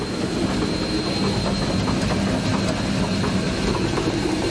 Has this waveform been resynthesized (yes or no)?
no